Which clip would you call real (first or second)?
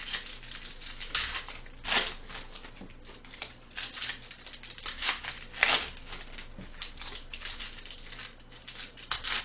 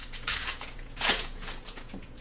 first